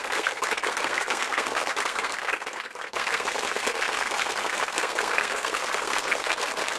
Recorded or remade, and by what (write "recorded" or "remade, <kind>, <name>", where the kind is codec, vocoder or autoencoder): remade, codec, SNAC